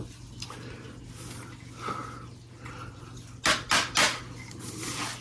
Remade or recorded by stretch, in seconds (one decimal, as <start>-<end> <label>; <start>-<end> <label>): 0.0-5.2 recorded

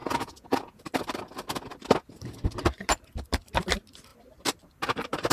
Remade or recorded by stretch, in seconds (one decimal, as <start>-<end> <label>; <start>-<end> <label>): 0.0-0.8 remade; 0.8-5.3 recorded